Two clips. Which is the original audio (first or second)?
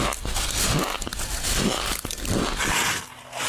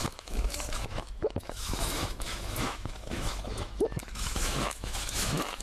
first